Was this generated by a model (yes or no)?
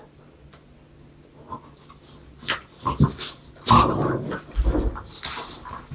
no